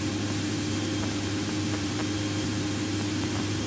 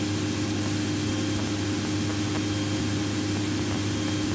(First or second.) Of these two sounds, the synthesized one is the first